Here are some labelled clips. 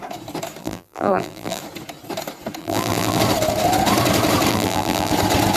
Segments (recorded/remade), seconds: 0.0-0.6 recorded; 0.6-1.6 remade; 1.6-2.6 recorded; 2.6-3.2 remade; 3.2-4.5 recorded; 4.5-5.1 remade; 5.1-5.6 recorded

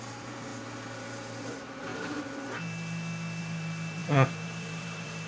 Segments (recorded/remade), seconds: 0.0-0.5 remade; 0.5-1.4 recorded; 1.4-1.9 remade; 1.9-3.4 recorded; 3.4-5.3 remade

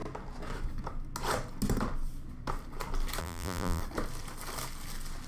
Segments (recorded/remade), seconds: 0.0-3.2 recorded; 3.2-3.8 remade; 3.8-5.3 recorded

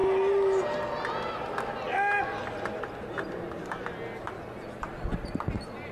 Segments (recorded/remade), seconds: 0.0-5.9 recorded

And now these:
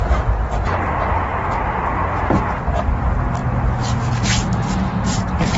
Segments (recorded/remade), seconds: 0.0-5.6 recorded

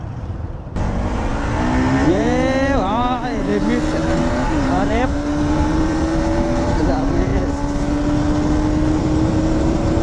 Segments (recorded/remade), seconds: 0.0-1.3 remade; 1.3-2.1 recorded; 2.1-3.5 remade; 3.5-4.3 recorded; 4.3-7.3 remade; 7.3-9.0 recorded; 9.0-10.0 remade